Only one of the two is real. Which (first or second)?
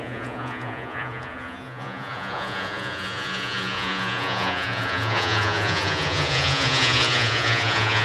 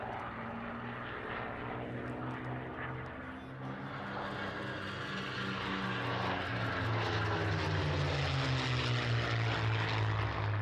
second